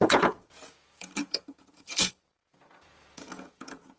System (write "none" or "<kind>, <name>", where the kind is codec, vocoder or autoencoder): vocoder, Vocos